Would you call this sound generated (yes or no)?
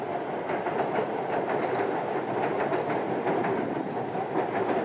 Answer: no